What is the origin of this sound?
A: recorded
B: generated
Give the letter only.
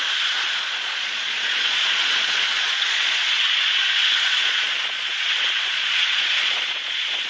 B